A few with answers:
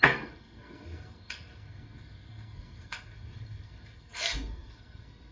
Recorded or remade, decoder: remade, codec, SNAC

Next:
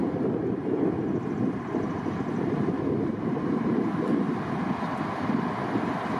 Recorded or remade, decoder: recorded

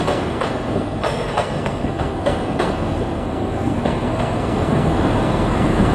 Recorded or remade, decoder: remade, codec, SNAC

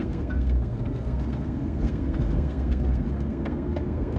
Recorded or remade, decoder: remade, codec, SNAC